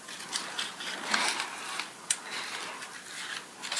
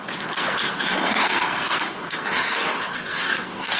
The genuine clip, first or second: first